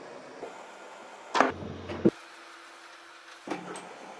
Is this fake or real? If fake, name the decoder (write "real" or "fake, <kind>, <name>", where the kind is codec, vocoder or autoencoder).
real